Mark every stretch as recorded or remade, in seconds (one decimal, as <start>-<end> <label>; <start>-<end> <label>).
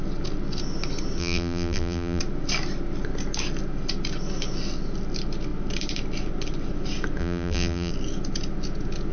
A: 0.0-1.2 recorded; 1.2-2.2 remade; 2.2-7.2 recorded; 7.2-7.9 remade; 7.9-9.1 recorded